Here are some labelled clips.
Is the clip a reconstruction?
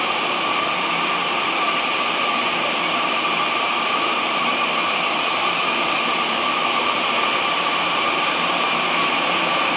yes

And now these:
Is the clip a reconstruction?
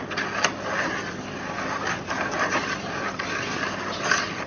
no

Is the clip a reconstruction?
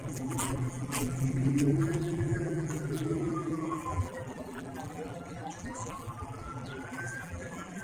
yes